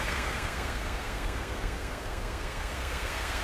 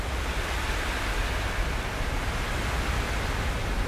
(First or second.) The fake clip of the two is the first